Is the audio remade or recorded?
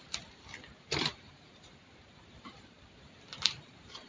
remade